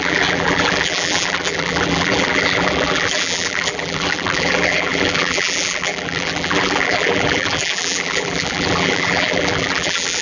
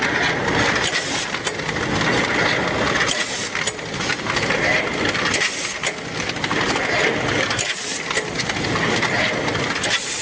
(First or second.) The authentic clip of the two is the second